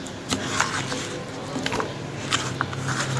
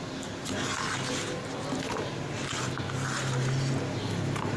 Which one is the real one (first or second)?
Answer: second